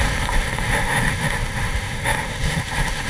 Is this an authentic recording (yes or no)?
no